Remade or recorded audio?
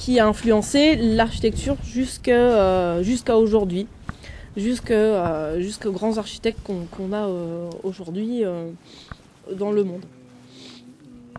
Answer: recorded